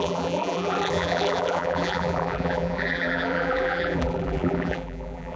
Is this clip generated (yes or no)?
yes